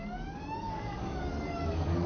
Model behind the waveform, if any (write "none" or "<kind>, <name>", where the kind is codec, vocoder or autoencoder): codec, DAC